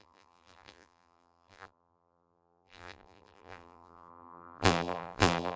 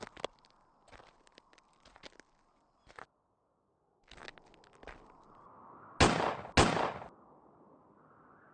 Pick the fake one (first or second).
first